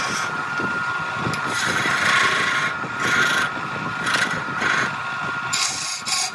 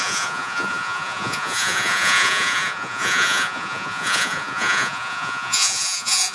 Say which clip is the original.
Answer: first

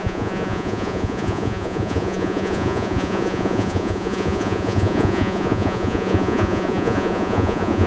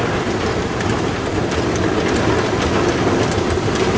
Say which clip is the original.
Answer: second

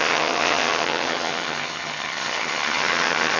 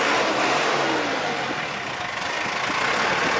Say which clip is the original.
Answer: second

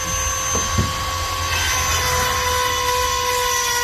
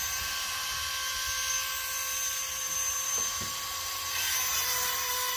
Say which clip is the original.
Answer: first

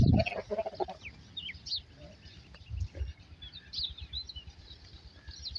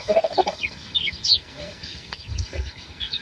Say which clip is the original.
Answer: first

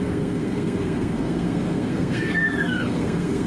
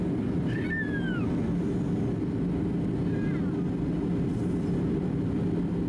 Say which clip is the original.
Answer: second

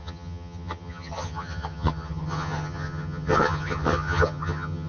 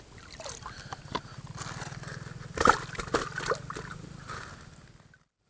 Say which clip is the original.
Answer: second